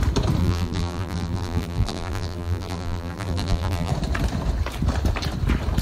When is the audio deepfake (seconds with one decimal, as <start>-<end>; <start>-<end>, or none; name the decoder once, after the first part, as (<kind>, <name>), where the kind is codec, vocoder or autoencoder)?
0.4-3.9 (vocoder, BigVGAN v2)